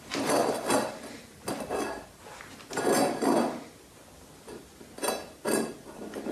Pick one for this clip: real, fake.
real